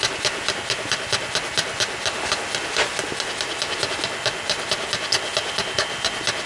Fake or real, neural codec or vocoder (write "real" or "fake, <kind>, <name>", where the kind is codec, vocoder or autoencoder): real